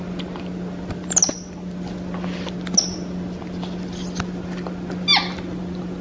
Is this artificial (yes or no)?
no